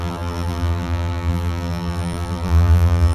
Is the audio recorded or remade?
remade